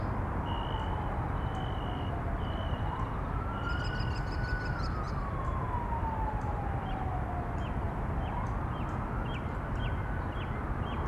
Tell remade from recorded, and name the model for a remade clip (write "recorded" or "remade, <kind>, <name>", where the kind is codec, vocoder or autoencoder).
recorded